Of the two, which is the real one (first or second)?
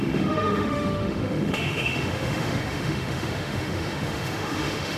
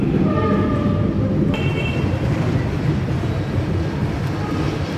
second